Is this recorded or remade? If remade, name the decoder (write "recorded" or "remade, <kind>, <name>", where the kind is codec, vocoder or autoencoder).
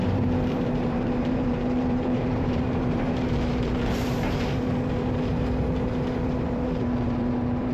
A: remade, vocoder, BigVGAN v2